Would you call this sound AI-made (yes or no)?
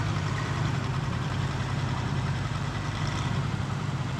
yes